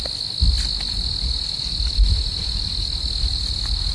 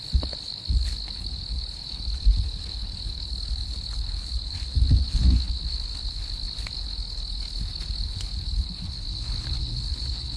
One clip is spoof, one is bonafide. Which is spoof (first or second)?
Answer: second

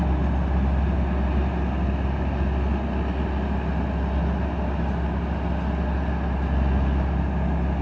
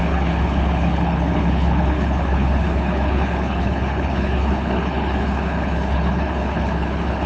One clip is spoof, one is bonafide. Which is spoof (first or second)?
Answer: second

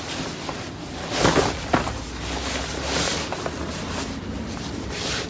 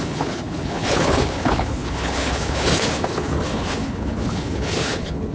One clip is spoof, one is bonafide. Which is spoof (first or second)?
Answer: second